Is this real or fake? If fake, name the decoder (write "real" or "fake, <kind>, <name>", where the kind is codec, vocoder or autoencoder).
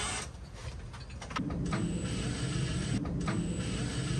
real